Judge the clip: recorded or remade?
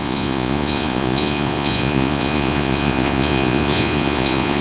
remade